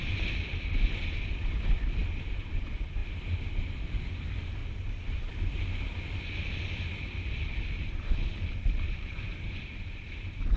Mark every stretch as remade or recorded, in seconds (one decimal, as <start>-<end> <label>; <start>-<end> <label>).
0.0-2.0 recorded; 2.0-2.6 remade; 2.6-4.6 recorded; 4.6-5.8 remade; 5.8-7.5 recorded; 7.5-10.6 remade